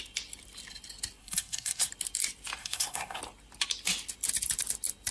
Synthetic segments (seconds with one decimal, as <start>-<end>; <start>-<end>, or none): 1.2-1.9; 2.6-3.2